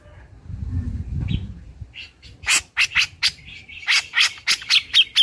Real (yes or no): yes